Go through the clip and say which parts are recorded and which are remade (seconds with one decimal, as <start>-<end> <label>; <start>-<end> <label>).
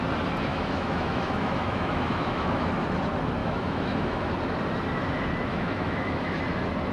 0.0-0.5 recorded; 0.5-2.7 remade; 2.7-3.4 recorded; 3.4-4.3 remade; 4.3-5.5 recorded; 5.5-6.4 remade; 6.4-6.9 recorded